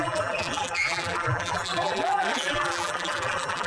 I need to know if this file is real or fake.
fake